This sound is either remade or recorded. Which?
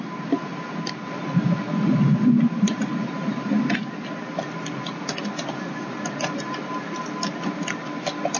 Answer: recorded